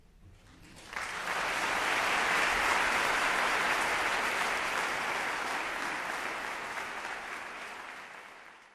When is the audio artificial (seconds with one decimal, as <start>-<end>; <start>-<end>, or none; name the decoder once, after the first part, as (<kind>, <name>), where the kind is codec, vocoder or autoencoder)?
1.2-1.9 (vocoder, BigVGAN v2); 2.7-3.3; 4.1-8.7